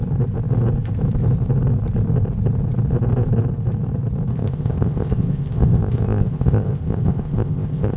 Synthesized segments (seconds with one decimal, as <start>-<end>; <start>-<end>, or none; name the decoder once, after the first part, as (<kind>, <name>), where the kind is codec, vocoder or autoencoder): 4.3-8.0 (codec, ZipCodec)